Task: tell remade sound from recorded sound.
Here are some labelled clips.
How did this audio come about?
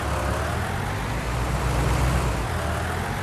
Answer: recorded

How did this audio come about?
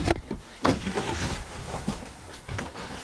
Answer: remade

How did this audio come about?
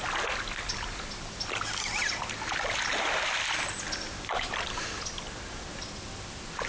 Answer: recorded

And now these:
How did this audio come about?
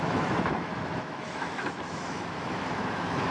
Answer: remade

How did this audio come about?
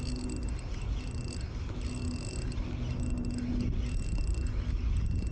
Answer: recorded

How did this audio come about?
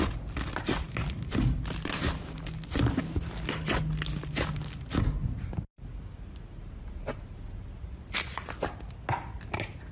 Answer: recorded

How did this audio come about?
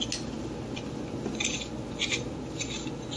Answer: recorded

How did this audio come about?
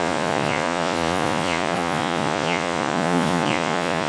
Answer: remade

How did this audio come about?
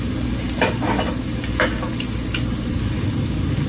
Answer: recorded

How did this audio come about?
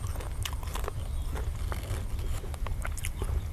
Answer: recorded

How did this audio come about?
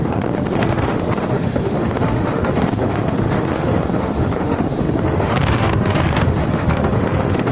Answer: remade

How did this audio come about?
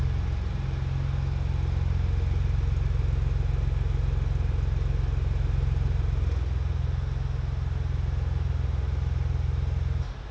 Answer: recorded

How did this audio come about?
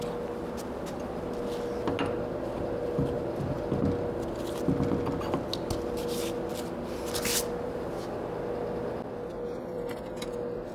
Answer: recorded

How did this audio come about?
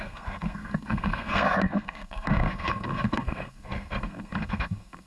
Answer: remade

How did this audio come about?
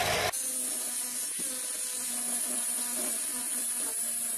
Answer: recorded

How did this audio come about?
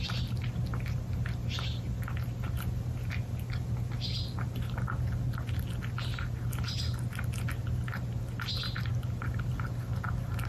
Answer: recorded